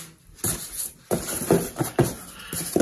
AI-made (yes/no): no